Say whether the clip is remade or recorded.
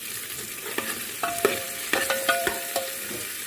remade